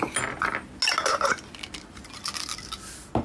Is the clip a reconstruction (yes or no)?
no